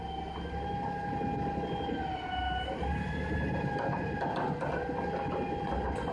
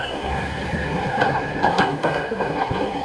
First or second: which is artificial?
second